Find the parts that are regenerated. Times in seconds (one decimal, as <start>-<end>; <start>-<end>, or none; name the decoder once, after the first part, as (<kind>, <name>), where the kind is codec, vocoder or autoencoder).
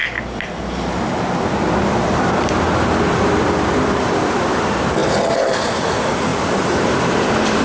3.2-5.0 (vocoder, BigVGAN v2); 5.6-7.6